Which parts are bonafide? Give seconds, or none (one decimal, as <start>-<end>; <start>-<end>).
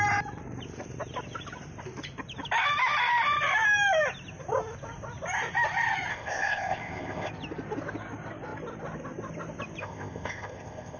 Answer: 0.0-6.1; 7.3-9.8